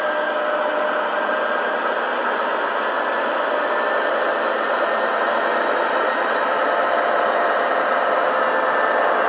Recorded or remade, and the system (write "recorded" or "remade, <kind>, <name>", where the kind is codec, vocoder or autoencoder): recorded